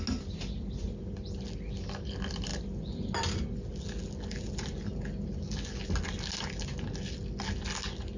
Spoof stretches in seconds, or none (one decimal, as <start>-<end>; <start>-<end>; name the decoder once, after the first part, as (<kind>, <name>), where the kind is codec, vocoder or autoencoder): none